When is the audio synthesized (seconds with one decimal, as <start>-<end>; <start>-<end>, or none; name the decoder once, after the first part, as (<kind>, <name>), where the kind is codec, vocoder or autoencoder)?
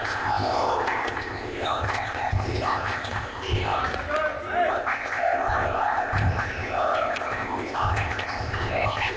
0.0-3.8 (codec, ZipCodec); 4.7-9.2